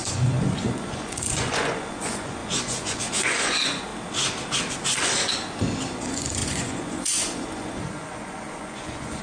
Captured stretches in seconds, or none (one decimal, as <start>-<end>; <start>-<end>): 3.9-5.9